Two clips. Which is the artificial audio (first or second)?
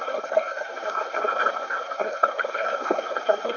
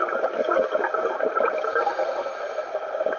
first